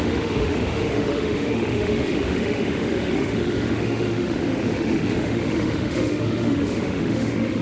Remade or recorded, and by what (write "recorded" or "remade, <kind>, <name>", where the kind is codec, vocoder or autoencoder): remade, autoencoder, DAC-VAE